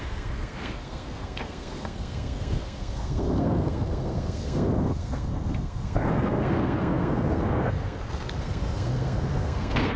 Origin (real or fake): fake